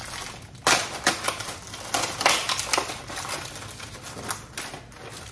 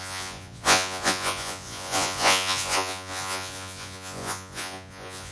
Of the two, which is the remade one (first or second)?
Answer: second